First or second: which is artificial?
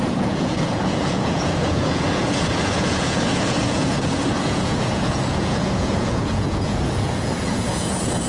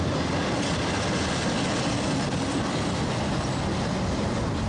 first